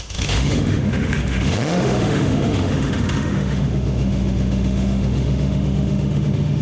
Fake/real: fake